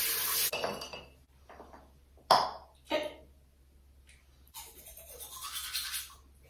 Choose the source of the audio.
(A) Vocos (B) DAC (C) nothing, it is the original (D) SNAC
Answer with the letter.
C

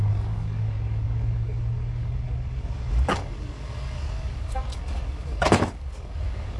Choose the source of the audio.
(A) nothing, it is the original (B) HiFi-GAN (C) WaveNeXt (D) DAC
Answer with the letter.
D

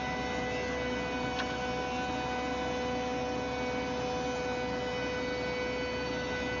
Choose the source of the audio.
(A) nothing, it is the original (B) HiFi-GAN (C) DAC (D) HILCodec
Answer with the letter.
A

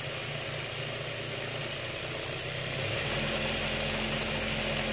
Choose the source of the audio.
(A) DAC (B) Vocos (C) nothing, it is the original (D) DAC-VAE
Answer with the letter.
C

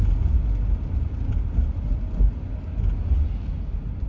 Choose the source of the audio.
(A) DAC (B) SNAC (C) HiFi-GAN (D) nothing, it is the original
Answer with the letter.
D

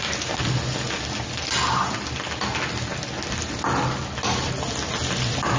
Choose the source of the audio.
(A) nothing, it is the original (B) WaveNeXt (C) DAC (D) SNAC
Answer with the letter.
A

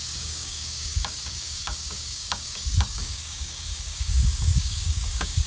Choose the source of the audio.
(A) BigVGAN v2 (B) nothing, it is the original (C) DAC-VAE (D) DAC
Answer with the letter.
D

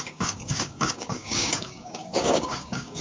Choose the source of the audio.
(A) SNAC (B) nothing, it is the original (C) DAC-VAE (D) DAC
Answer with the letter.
D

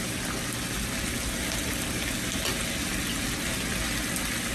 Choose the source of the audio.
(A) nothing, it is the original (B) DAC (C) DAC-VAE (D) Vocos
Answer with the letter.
A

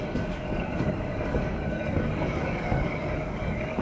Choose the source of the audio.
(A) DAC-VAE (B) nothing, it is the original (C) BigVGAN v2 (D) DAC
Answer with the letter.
D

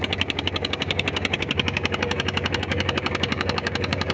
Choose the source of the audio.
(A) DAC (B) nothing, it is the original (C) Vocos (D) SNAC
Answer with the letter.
A